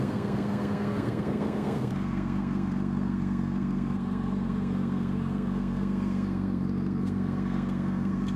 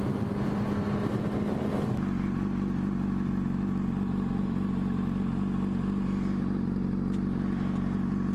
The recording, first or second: second